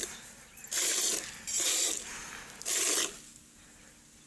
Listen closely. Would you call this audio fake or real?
real